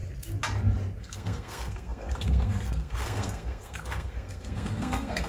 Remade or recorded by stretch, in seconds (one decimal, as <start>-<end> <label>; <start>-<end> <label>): 0.0-1.0 recorded; 1.0-5.3 remade